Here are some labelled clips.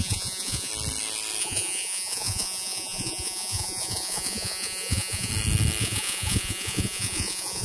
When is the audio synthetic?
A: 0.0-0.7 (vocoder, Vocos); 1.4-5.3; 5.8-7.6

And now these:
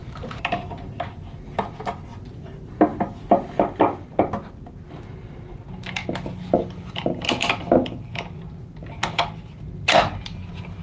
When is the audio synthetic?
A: 0.0-0.8 (vocoder, BigVGAN v2)

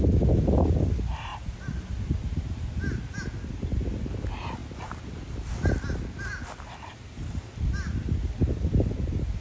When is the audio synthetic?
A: none

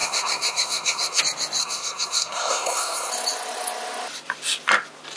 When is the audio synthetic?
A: 0.0-1.2 (codec, SNAC); 1.6-3.1

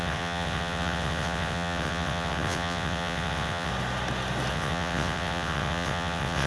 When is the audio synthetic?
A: 0.0-3.7 (vocoder, WaveNeXt); 4.5-6.5